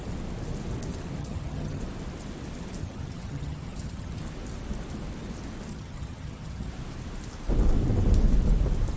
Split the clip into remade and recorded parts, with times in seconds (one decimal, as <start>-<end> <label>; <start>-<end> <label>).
0.0-1.2 recorded; 1.2-1.8 remade; 1.8-2.8 recorded; 2.8-4.2 remade; 4.2-5.7 recorded; 5.7-6.7 remade; 6.7-9.0 recorded